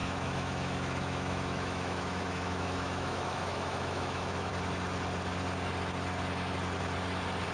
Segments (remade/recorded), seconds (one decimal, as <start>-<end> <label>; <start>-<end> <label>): 0.0-4.5 remade; 4.5-7.5 recorded